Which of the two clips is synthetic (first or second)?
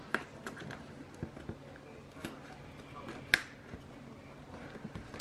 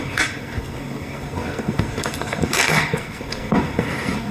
second